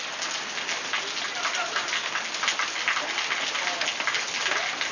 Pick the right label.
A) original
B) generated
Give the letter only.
A